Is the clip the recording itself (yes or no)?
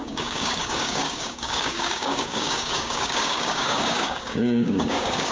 no